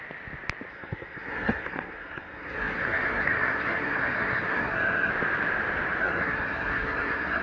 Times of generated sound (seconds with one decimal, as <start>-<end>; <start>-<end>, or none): 0.7-5.1; 6.0-7.4